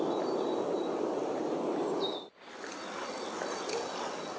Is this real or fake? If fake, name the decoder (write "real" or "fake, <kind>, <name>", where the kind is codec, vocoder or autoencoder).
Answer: real